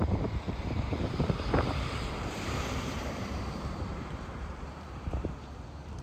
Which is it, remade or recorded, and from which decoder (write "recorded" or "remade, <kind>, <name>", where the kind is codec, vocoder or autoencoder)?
remade, vocoder, BigVGAN v2